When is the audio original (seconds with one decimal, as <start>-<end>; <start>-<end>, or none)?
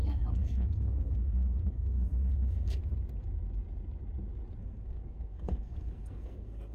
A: 2.8-4.6